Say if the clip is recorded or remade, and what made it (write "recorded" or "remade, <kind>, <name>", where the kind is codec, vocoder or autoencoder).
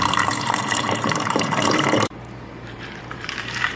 remade, vocoder, BigVGAN v2